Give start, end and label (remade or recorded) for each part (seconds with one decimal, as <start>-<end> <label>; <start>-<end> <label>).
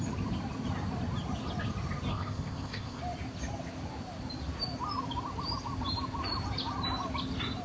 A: 0.0-2.1 recorded; 2.1-3.0 remade; 3.0-7.6 recorded